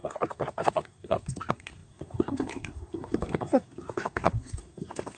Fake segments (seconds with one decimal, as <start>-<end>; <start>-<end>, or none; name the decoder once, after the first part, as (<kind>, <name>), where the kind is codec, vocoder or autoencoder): 0.0-5.2 (codec, SNAC)